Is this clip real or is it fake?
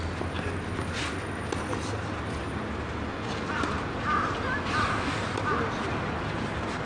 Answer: real